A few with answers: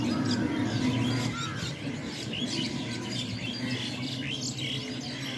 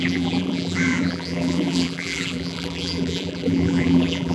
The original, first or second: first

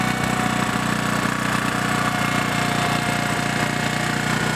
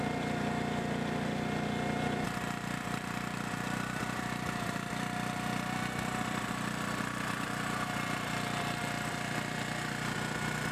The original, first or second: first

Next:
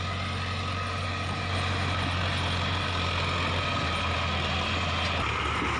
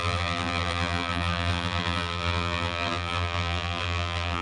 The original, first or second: first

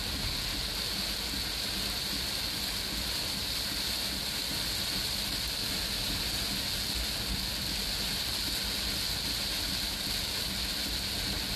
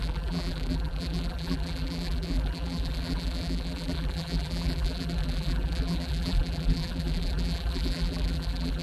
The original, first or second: first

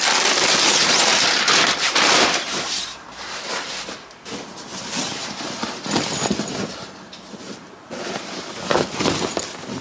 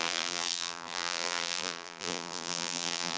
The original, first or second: first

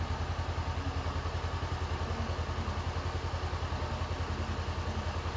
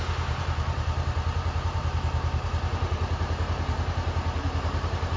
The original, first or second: first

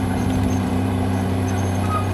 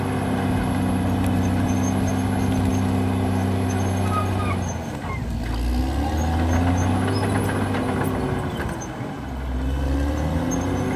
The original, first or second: second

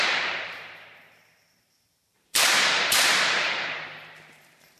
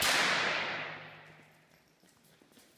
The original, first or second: second